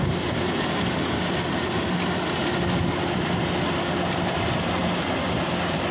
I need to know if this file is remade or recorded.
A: recorded